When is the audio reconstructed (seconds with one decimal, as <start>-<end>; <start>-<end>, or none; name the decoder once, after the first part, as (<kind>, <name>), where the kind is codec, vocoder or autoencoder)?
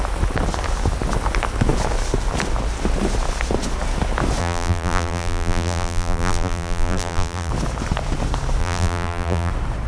4.4-7.5 (vocoder, BigVGAN v2); 8.6-9.5